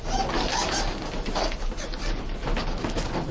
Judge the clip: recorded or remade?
recorded